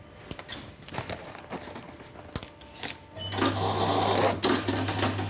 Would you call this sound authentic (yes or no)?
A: yes